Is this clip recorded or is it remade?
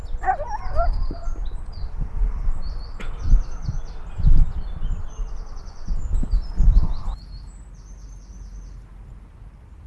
recorded